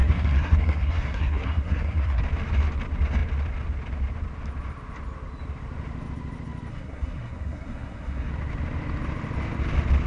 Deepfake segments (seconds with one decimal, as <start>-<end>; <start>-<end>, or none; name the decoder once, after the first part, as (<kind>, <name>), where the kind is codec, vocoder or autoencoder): 0.0-2.2 (codec, SNAC); 6.7-8.3